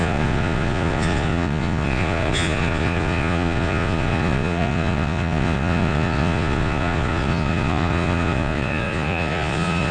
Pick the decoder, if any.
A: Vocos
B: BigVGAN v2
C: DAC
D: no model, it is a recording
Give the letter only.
A